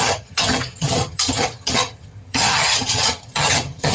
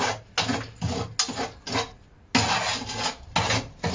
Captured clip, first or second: second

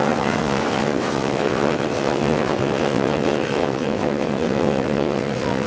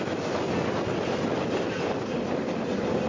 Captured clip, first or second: second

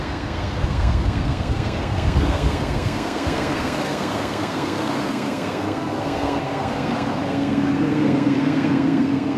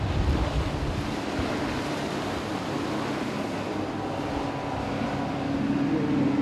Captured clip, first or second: second